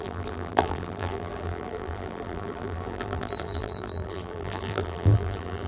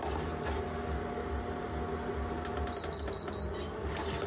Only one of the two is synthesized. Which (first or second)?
first